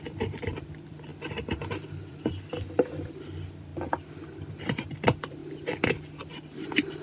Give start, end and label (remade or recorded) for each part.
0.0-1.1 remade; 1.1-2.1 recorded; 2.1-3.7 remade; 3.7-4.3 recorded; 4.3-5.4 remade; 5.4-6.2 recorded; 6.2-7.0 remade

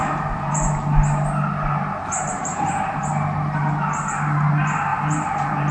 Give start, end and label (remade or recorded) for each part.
0.0-0.7 remade; 0.7-2.0 recorded; 2.0-3.1 remade; 3.1-4.9 recorded; 4.9-5.7 remade